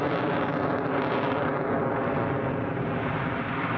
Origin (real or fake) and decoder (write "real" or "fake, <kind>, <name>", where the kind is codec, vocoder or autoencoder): real